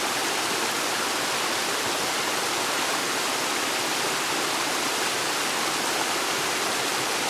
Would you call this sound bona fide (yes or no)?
yes